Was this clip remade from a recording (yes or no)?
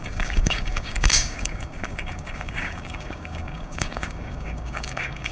yes